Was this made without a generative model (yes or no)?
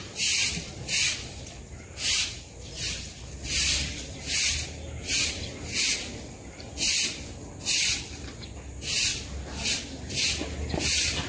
yes